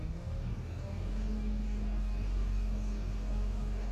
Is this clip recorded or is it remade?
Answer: remade